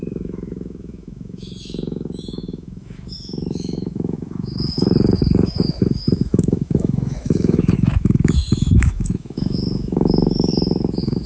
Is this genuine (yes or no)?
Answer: no